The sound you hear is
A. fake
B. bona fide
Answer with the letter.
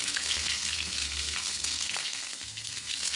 A